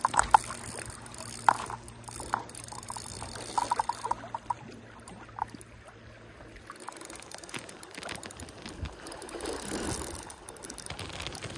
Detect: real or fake real